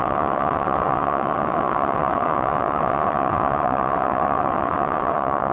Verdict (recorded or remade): remade